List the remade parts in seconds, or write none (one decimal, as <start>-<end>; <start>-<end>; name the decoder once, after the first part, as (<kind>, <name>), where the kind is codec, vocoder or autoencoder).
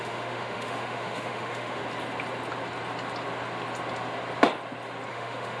0.0-1.8 (autoencoder, DAC-VAE); 5.1-5.6